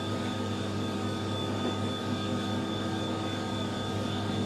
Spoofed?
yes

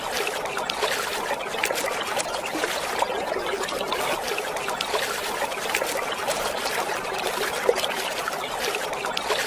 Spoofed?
no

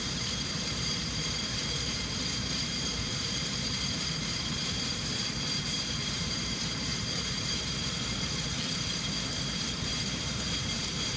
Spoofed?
yes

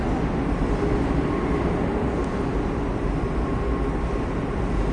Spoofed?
no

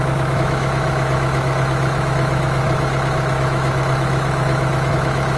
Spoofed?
yes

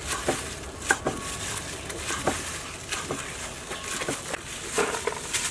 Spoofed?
no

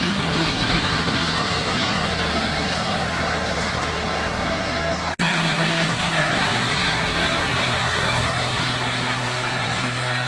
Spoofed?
yes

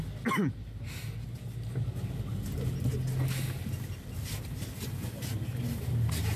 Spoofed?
no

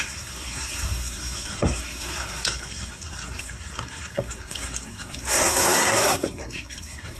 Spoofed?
yes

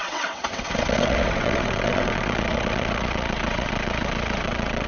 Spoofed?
yes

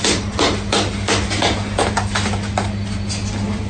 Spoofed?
no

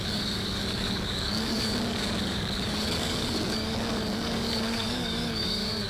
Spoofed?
yes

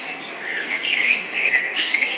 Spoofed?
yes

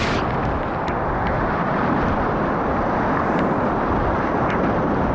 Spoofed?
no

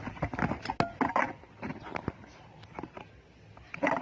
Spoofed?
no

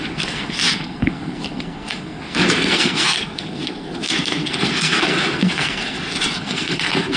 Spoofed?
yes